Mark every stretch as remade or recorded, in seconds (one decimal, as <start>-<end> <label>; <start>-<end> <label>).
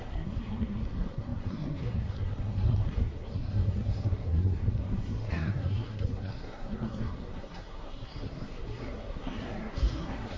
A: 0.0-10.4 remade